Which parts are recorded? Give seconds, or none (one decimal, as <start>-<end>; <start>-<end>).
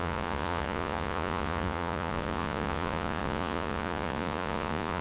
none